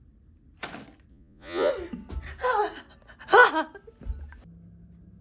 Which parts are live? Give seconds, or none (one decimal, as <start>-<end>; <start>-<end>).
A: 0.0-1.1; 1.7-5.2